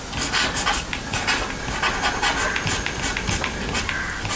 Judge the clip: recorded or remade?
recorded